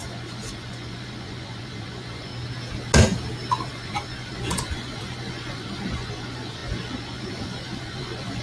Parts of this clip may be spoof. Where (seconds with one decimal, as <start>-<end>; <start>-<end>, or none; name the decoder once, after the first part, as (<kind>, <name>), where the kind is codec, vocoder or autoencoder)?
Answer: 0.0-2.3 (vocoder, Vocos); 3.7-8.4